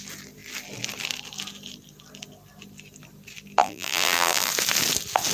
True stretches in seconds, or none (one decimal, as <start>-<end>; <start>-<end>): 0.0-3.6; 4.5-5.3